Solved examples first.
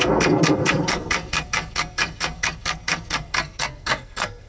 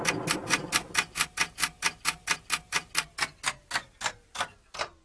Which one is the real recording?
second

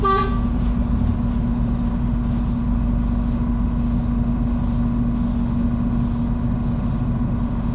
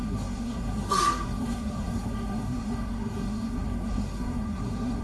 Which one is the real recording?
first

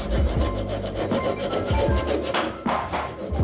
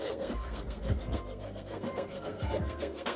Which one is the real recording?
first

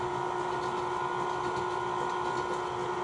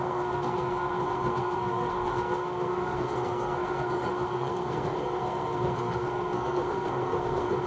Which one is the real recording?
first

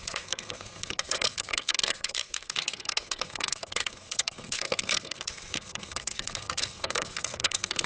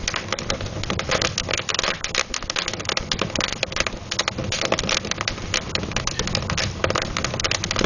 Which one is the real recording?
second